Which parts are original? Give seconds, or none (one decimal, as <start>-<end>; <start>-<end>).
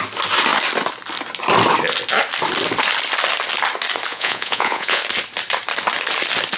0.0-4.1; 5.0-6.6